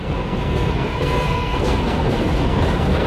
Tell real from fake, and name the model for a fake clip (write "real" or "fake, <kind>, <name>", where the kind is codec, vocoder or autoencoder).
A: fake, codec, SNAC